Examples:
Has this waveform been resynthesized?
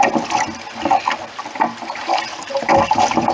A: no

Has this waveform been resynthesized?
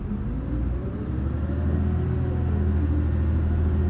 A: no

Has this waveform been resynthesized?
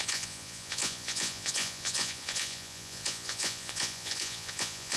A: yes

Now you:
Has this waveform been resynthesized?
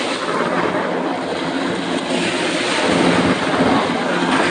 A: no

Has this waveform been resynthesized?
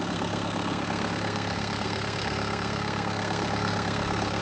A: yes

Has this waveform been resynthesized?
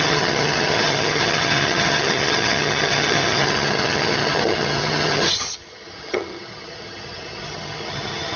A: yes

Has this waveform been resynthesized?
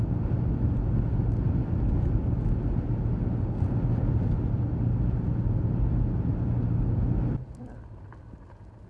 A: no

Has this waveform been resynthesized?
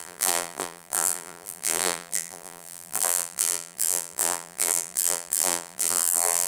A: yes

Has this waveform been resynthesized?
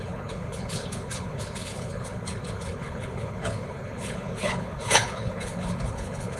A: yes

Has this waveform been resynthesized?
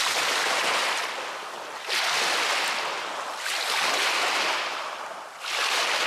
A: no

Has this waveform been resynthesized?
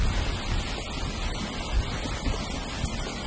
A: no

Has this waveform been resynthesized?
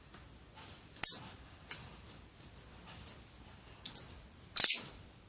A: no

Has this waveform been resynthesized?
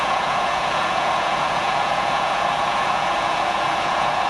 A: yes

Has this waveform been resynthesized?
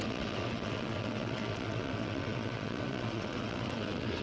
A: yes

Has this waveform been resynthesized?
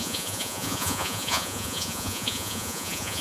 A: yes